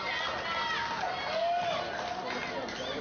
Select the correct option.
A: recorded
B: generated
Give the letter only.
A